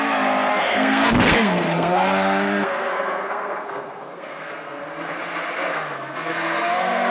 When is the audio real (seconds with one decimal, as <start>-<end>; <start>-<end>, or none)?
0.0-0.5; 4.8-5.7